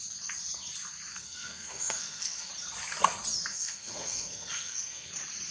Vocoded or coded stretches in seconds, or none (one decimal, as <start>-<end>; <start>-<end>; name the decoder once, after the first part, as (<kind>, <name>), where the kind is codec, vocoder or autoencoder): 1.1-2.5 (codec, SNAC); 3.5-5.1